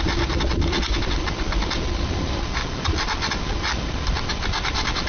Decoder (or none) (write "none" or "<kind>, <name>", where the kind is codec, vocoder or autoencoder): none